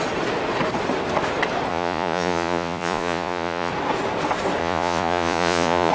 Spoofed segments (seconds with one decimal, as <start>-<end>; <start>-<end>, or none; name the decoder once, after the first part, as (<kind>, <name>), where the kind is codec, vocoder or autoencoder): 1.7-3.7 (vocoder, Vocos); 4.6-5.9